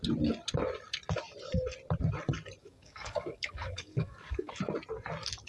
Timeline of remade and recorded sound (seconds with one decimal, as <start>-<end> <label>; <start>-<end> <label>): 0.0-2.6 recorded; 2.6-4.6 remade; 4.6-5.5 recorded